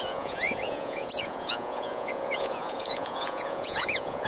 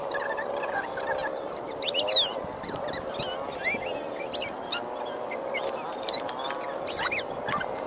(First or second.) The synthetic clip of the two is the first